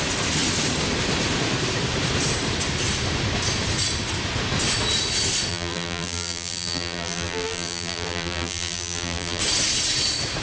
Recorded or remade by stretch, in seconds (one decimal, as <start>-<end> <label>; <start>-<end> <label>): 0.0-5.5 recorded; 5.5-9.4 remade; 9.4-10.4 recorded